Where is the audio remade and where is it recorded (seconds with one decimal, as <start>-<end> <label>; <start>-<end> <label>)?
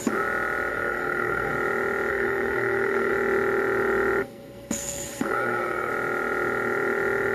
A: 0.0-0.7 recorded; 0.7-1.5 remade; 1.5-2.1 recorded; 2.1-3.1 remade; 3.1-4.2 recorded; 4.2-5.9 remade; 5.9-7.3 recorded